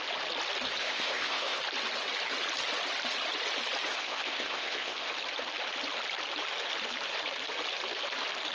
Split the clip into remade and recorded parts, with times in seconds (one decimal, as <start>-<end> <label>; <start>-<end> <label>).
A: 0.0-0.8 recorded; 0.8-1.6 remade; 1.6-3.9 recorded; 3.9-5.1 remade; 5.1-8.5 recorded